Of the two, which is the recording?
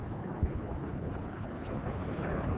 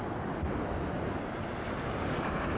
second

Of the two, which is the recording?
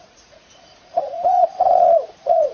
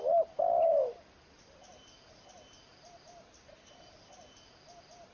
second